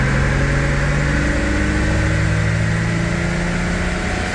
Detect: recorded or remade recorded